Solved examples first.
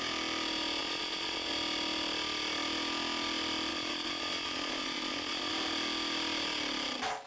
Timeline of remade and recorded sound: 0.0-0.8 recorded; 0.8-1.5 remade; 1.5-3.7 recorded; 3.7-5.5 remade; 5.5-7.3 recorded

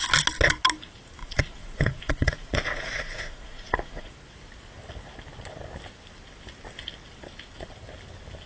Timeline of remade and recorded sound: 0.0-1.2 recorded; 1.2-4.1 remade; 4.1-8.5 recorded

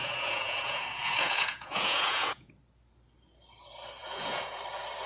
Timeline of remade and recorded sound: 0.0-2.5 remade; 2.5-4.0 recorded; 4.0-4.6 remade; 4.6-5.1 recorded

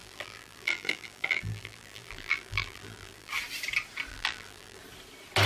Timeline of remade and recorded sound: 0.0-3.3 remade; 3.3-4.1 recorded; 4.1-4.8 remade; 4.8-5.5 recorded

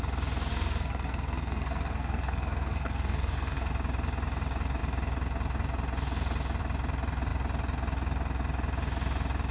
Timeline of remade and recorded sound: 0.0-0.5 recorded; 0.5-3.7 remade; 3.7-9.5 recorded

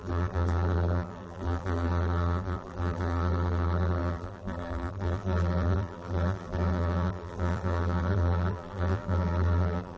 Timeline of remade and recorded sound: 0.0-10.0 remade

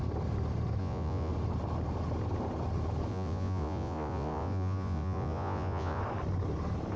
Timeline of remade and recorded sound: 0.0-0.8 recorded; 0.8-1.3 remade; 1.3-3.1 recorded; 3.1-6.0 remade; 6.0-7.0 recorded